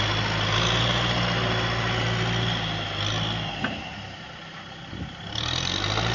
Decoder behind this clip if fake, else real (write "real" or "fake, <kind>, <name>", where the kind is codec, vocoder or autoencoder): real